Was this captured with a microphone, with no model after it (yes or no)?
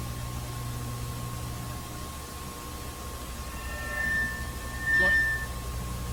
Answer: yes